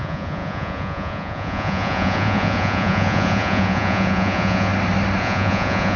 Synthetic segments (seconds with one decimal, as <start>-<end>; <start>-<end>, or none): 0.0-4.7; 5.2-6.0